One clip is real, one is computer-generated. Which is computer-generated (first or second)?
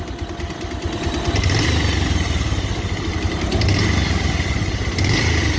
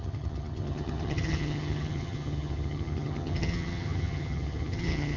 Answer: second